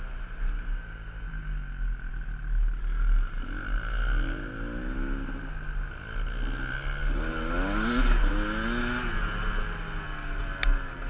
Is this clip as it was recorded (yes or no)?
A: yes